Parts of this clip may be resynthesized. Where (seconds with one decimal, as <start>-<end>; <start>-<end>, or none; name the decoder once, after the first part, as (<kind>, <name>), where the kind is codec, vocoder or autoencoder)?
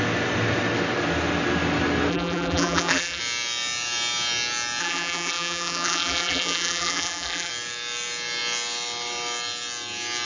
2.1-3.2 (vocoder, BigVGAN v2); 4.8-7.5